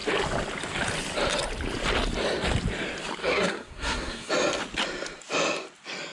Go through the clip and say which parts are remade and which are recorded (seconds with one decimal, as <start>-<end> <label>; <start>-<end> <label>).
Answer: 0.0-3.2 recorded; 3.2-4.3 remade; 4.3-6.1 recorded